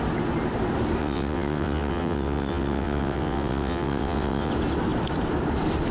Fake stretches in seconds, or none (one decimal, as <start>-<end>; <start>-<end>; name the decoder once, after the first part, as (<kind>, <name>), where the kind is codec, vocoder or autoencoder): 1.0-4.5 (vocoder, WaveNeXt)